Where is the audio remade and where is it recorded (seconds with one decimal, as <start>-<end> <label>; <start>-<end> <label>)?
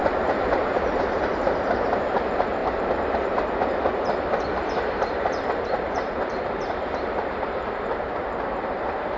0.0-9.2 remade